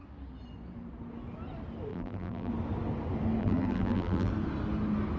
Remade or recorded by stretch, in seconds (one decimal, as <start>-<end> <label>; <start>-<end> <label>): 0.0-1.9 recorded; 1.9-2.5 remade; 2.5-3.4 recorded; 3.4-4.3 remade; 4.3-5.2 recorded